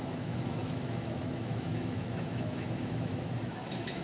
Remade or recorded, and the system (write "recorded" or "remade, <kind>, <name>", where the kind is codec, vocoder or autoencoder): remade, autoencoder, DAC-VAE